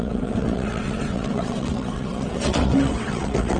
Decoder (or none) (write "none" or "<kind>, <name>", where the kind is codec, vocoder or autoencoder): vocoder, WaveNeXt